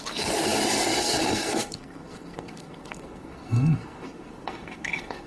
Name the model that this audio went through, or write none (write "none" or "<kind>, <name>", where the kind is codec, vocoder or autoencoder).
codec, SNAC